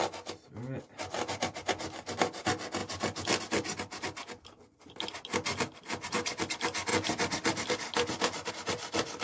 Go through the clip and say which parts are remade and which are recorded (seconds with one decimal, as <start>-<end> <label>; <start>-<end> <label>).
0.0-6.9 recorded; 6.9-8.5 remade; 8.5-9.2 recorded